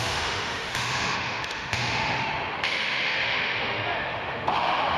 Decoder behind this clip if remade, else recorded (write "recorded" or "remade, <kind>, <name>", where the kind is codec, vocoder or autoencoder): remade, autoencoder, DAC-VAE